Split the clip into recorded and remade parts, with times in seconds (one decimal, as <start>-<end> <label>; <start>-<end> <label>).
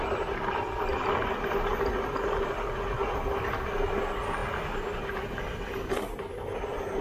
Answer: 0.0-7.0 recorded